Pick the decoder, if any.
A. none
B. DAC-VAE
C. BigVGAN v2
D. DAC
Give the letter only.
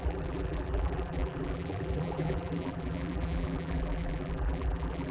C